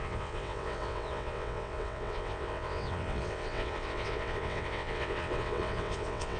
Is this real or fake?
fake